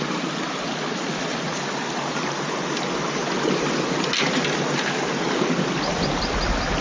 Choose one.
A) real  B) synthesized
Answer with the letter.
A